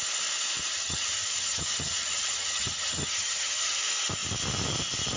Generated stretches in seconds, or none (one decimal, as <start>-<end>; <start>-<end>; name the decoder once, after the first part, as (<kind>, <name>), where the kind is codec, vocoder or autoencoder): 0.7-3.8 (vocoder, HiFi-GAN)